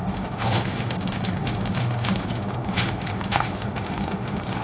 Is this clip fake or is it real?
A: fake